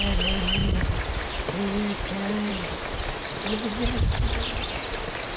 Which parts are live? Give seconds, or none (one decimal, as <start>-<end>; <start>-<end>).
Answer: 0.0-5.4

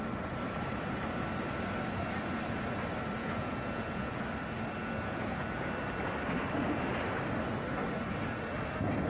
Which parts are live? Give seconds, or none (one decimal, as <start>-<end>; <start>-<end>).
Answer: 0.0-3.2; 4.2-4.8; 5.7-9.1

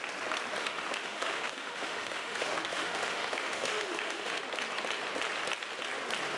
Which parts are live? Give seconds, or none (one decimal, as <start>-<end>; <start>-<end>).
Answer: 0.0-0.6; 4.4-6.4

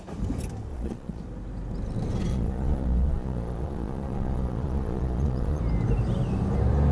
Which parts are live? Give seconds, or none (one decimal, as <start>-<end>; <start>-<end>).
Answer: 0.0-0.7; 1.2-2.3; 5.6-6.9

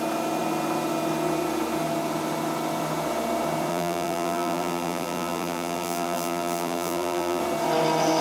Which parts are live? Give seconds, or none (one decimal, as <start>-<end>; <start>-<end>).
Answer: 0.0-3.7; 7.4-8.2